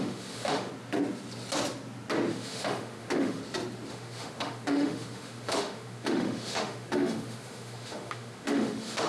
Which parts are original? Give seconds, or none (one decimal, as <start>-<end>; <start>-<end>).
0.7-2.3; 3.4-3.9